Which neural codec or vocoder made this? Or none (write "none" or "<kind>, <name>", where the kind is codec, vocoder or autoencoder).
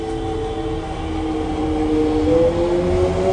none